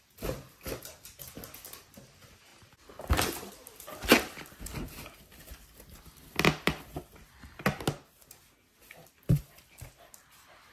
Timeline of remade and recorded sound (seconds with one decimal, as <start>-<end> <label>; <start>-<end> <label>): 0.0-10.7 recorded